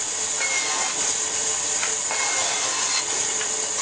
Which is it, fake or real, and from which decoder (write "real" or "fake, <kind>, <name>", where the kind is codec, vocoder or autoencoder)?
real